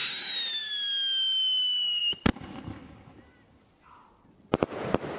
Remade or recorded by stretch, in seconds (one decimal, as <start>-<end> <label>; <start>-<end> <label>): 0.0-5.2 recorded